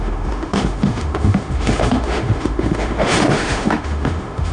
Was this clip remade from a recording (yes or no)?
yes